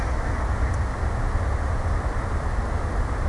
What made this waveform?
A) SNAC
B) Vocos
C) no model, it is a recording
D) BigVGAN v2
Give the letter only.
C